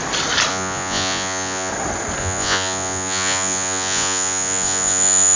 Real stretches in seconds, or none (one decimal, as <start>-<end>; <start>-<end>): 0.0-0.5; 1.7-2.2